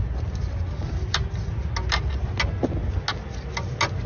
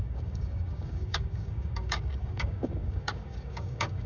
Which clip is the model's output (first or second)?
second